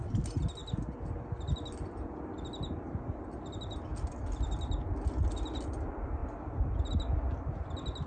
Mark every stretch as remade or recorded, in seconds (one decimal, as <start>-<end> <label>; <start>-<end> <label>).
0.0-8.1 recorded